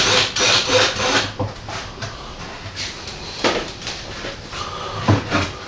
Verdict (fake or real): real